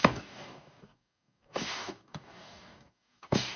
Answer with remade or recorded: remade